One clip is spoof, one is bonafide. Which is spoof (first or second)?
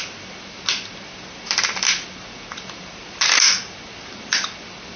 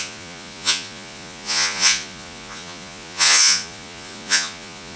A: second